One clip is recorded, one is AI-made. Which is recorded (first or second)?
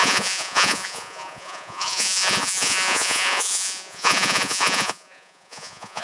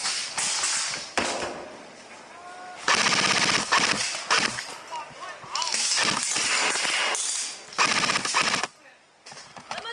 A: second